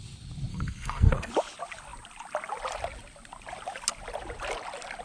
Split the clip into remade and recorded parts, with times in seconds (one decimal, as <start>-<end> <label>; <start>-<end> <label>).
0.0-0.5 recorded; 0.5-1.3 remade; 1.3-5.0 recorded